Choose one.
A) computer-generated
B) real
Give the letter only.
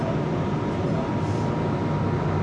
B